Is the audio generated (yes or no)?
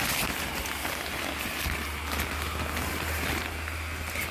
no